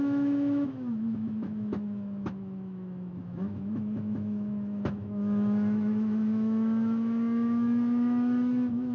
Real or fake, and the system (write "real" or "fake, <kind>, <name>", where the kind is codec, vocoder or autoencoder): fake, autoencoder, DAC-VAE